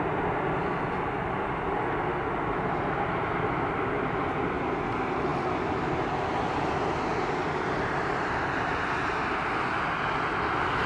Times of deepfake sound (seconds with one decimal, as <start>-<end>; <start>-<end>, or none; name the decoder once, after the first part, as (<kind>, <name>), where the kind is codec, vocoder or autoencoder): none